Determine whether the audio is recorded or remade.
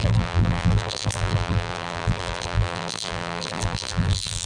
remade